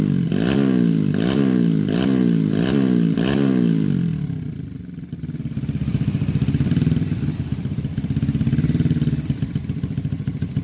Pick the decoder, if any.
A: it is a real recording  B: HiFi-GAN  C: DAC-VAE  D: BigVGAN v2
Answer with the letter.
D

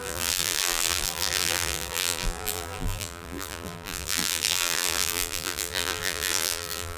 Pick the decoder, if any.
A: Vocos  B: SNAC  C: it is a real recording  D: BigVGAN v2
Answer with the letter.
D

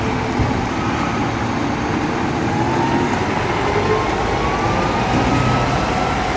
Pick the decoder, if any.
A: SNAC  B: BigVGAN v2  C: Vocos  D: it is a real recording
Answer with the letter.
D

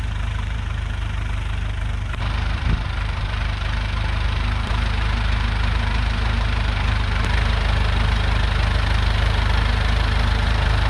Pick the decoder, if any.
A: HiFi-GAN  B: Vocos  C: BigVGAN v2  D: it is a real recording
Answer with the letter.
C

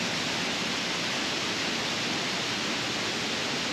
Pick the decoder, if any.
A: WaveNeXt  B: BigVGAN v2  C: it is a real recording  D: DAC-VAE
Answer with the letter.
C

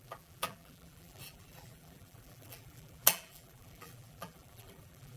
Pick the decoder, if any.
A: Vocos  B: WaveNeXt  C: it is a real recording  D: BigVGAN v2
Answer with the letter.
D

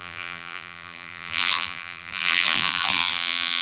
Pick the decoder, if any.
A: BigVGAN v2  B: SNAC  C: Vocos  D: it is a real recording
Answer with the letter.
A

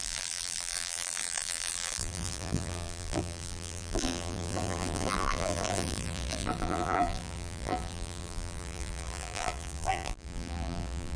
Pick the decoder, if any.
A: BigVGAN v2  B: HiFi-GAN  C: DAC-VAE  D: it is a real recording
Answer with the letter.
A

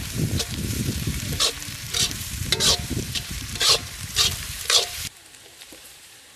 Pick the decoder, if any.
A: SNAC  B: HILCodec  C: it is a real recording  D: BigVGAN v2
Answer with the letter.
D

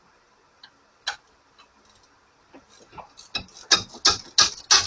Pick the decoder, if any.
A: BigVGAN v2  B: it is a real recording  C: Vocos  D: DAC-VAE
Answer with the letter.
B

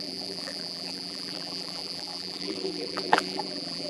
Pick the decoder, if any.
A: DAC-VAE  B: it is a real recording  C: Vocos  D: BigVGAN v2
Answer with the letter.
D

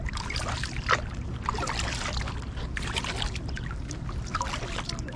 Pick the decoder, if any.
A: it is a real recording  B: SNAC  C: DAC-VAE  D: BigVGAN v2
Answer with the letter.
A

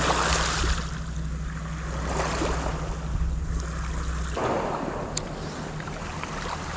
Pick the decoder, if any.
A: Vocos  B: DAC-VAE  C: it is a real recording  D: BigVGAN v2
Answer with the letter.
C